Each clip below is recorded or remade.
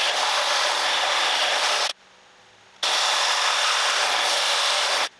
recorded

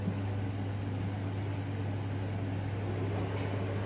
recorded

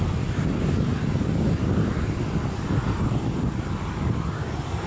recorded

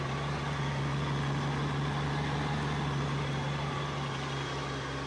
recorded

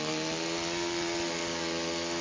recorded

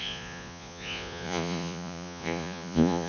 remade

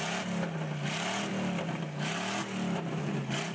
recorded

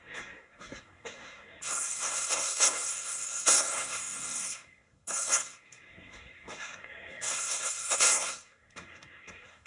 remade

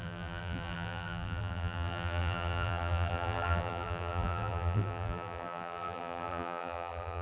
remade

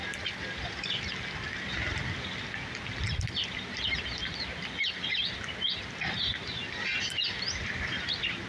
recorded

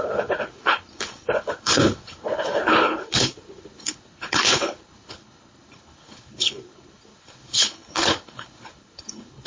remade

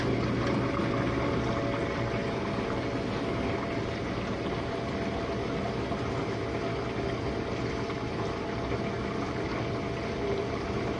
recorded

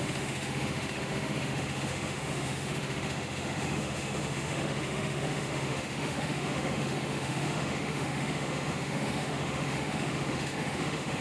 remade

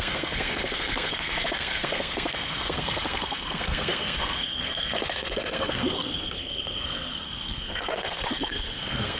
remade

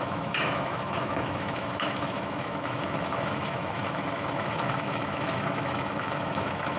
remade